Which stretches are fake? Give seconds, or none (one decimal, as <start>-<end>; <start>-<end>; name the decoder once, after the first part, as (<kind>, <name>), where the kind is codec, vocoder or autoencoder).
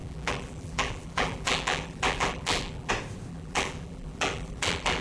0.0-2.9 (vocoder, BigVGAN v2); 3.3-5.0